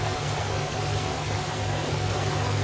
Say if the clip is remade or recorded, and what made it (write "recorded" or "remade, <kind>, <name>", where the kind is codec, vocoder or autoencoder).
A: remade, codec, SNAC